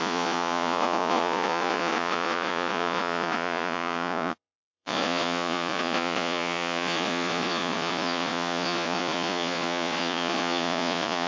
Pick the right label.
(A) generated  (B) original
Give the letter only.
A